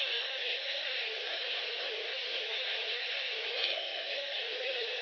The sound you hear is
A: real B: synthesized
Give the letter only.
B